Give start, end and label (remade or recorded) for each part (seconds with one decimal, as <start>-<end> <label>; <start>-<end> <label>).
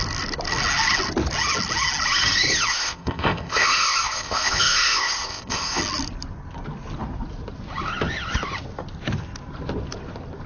0.0-2.7 recorded; 2.7-5.8 remade; 5.8-10.5 recorded